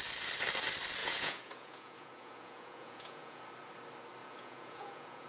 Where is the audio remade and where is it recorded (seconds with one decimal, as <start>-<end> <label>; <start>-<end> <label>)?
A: 0.0-1.0 recorded; 1.0-3.4 remade; 3.4-4.2 recorded; 4.2-5.3 remade